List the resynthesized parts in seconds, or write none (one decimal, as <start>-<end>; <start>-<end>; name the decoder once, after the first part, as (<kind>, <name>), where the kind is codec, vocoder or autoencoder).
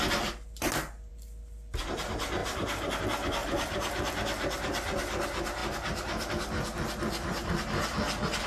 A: 1.1-1.9 (vocoder, BigVGAN v2); 2.4-3.0; 3.4-4.1; 5.6-6.3